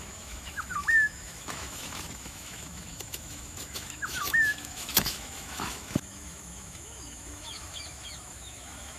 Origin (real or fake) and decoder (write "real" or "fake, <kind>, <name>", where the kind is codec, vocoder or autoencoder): fake, autoencoder, DAC-VAE